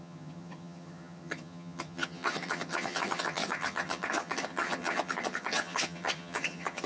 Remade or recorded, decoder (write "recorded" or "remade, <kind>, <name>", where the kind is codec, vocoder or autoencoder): remade, vocoder, HiFi-GAN